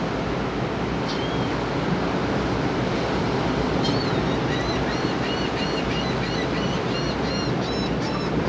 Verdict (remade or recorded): recorded